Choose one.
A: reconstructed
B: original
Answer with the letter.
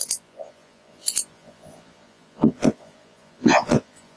A